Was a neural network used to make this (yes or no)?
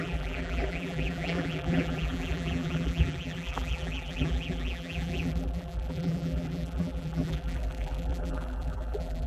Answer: yes